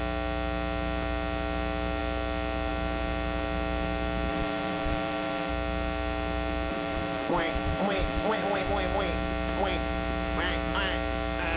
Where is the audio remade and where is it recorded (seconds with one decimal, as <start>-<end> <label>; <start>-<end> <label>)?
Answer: 0.0-4.3 recorded; 4.3-5.5 remade; 5.5-6.7 recorded; 6.7-8.7 remade; 8.7-11.6 recorded